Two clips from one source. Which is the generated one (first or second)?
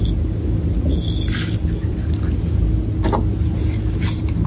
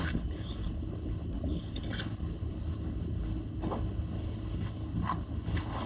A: second